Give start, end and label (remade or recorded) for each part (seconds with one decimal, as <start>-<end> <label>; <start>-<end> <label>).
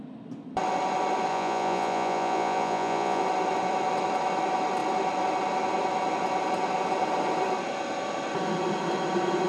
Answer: 0.0-1.3 recorded; 1.3-3.2 remade; 3.2-9.5 recorded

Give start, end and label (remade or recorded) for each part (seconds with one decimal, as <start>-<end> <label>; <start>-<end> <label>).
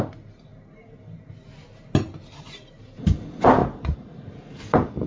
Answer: 0.0-3.6 recorded; 3.6-4.6 remade; 4.6-5.1 recorded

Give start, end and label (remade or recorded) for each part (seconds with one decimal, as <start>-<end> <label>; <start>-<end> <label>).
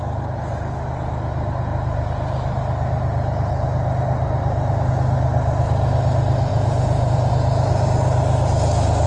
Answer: 0.0-6.5 recorded; 6.5-7.3 remade; 7.3-9.1 recorded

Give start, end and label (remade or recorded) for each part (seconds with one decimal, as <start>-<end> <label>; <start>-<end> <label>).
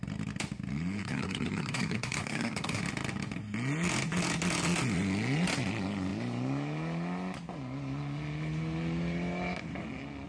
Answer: 0.0-1.0 recorded; 1.0-2.8 remade; 2.8-10.3 recorded